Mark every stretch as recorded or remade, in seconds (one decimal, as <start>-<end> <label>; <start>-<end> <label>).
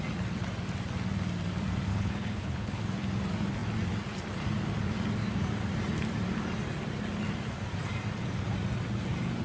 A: 0.0-1.9 recorded; 1.9-2.8 remade; 2.8-9.4 recorded